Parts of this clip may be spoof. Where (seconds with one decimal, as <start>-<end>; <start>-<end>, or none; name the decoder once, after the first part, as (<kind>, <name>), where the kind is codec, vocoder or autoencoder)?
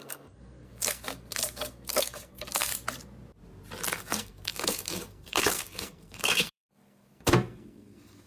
0.0-2.7 (codec, SNAC); 4.0-8.3